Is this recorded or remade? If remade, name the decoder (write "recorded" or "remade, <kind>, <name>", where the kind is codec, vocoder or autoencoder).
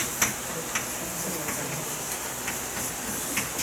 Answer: recorded